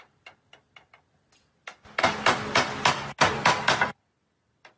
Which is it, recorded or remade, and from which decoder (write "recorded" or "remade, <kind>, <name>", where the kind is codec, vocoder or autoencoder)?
recorded